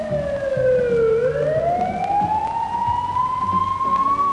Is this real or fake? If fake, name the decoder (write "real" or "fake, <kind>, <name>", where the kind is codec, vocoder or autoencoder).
real